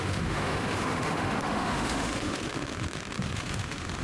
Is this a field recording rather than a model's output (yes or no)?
no